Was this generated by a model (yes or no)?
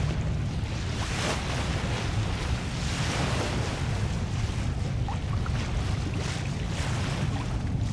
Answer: no